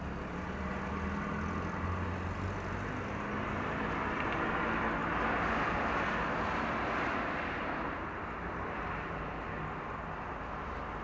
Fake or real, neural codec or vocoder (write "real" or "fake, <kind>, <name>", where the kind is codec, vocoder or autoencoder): real